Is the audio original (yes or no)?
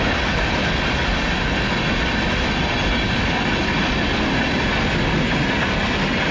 yes